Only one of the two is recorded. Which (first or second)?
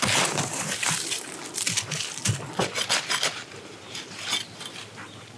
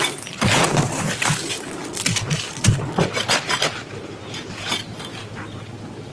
second